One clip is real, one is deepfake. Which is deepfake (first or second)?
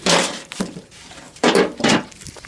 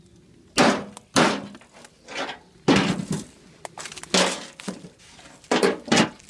first